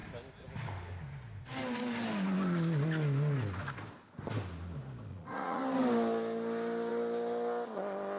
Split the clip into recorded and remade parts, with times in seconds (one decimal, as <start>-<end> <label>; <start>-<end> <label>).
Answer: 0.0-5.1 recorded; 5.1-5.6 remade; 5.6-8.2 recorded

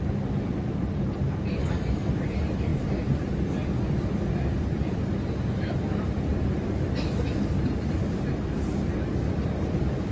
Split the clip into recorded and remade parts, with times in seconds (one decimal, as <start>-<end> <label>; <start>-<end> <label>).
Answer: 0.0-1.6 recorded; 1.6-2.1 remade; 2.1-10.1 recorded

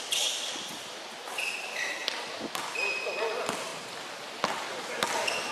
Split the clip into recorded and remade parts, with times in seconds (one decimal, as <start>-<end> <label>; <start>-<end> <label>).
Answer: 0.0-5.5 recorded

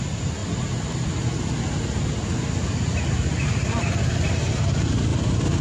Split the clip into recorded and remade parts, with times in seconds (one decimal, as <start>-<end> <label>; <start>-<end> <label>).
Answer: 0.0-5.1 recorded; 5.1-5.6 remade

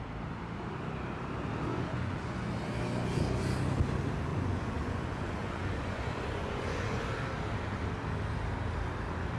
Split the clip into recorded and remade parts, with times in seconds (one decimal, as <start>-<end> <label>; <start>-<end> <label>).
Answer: 0.0-1.7 recorded; 1.7-2.5 remade; 2.5-4.3 recorded; 4.3-7.0 remade; 7.0-9.4 recorded

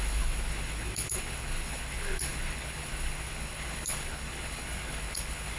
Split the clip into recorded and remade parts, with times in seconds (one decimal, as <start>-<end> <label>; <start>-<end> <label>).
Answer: 0.0-5.6 remade

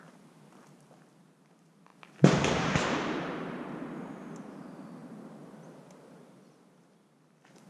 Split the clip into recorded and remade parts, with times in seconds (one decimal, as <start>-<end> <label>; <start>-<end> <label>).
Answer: 0.0-7.7 recorded